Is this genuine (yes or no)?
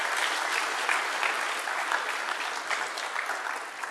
yes